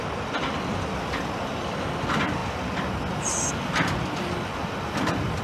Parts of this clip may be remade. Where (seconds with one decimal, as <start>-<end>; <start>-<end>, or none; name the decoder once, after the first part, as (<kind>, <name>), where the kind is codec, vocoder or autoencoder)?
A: none